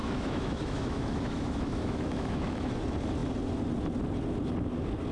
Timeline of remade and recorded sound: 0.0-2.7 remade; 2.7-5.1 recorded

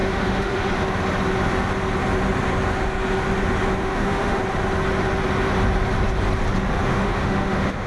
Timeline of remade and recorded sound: 0.0-0.7 remade; 0.7-3.8 recorded; 3.8-4.4 remade; 4.4-6.9 recorded; 6.9-7.9 remade

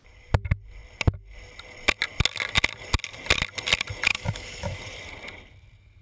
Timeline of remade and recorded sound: 0.0-4.1 recorded; 4.1-4.8 remade; 4.8-6.0 recorded

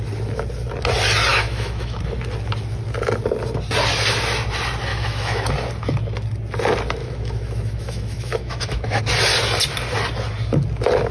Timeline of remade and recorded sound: 0.0-1.3 recorded; 1.3-2.0 remade; 2.0-4.9 recorded; 4.9-5.5 remade; 5.5-7.0 recorded; 7.0-9.0 remade; 9.0-11.1 recorded

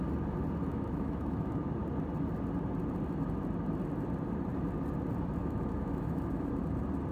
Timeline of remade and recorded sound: 0.0-0.7 recorded; 0.7-1.6 remade; 1.6-5.4 recorded; 5.4-6.5 remade; 6.5-7.1 recorded

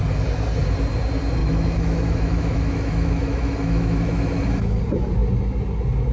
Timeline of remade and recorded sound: 0.0-1.4 recorded; 1.4-4.8 remade; 4.8-6.1 recorded